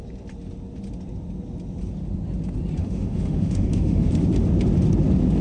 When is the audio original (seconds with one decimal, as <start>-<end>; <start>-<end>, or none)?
0.0-2.8; 4.1-5.4